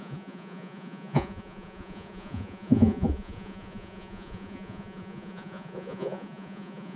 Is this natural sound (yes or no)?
no